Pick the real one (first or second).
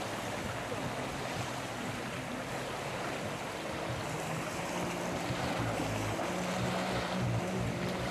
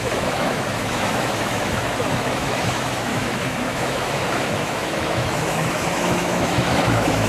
first